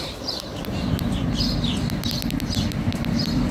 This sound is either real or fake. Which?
real